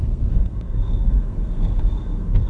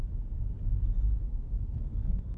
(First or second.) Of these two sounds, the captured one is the second